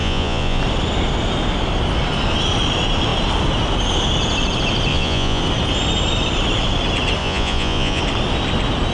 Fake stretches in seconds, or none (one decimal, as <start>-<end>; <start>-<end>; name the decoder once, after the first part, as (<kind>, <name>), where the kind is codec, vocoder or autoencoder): 0.0-0.6 (vocoder, Vocos); 4.9-5.4; 7.2-8.0